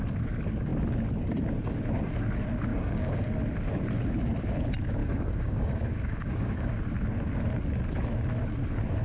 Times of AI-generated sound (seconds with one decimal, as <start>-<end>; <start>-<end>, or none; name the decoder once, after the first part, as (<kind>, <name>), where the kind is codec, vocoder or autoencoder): 2.7-3.4 (codec, DAC); 5.0-6.8